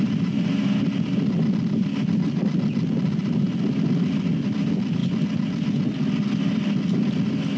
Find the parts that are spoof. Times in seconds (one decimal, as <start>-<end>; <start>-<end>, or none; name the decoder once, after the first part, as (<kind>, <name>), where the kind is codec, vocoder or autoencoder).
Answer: none